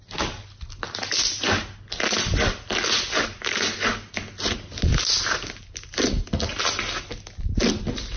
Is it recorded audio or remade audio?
recorded